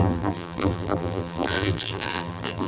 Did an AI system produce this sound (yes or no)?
yes